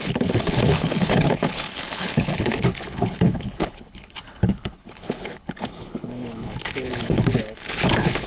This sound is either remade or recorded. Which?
remade